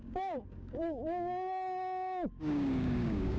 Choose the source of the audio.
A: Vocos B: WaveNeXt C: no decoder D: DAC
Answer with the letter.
D